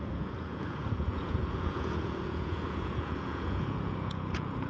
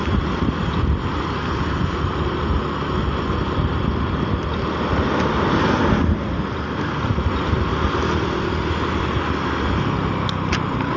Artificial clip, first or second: first